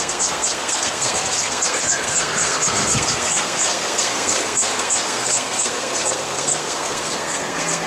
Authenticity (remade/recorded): remade